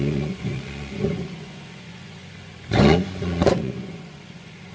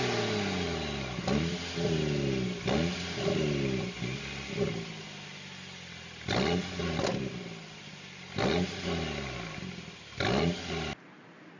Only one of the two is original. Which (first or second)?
second